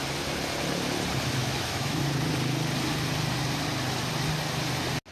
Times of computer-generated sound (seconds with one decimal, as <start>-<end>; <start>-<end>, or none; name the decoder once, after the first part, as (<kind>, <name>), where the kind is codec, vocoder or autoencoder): 1.4-2.0 (autoencoder, DAC-VAE)